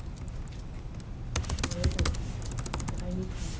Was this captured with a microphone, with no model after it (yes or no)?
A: yes